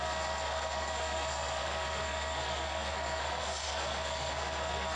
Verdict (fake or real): fake